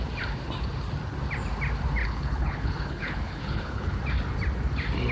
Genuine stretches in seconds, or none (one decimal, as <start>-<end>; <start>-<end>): 0.0-2.0; 4.0-5.1